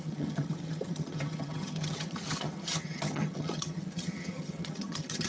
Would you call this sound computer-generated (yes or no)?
yes